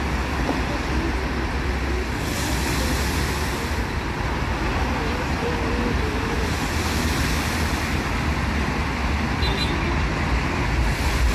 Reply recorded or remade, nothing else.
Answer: recorded